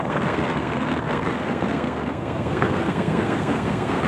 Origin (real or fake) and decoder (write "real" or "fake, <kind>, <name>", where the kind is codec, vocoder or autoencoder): fake, codec, SNAC